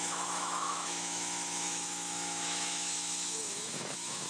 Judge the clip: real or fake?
fake